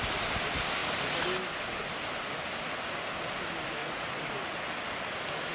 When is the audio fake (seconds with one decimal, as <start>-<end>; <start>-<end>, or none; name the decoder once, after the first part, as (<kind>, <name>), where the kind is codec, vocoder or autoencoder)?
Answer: 3.8-4.5 (vocoder, Vocos)